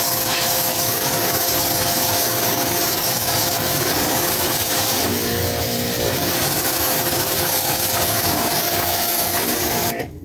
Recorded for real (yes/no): no